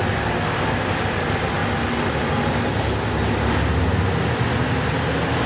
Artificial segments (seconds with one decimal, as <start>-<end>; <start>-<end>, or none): none